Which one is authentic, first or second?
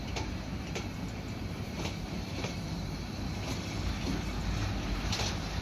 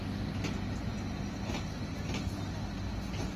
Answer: second